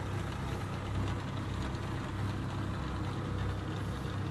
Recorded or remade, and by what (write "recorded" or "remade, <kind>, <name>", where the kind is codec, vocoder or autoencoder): recorded